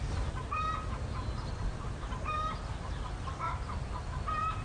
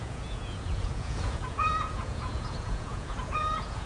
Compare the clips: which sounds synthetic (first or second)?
second